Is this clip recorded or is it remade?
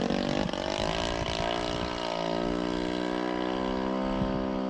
recorded